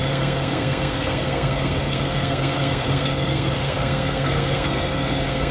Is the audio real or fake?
fake